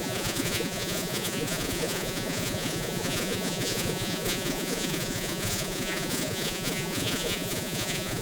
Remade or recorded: remade